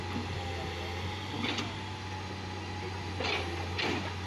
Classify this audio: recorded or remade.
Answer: recorded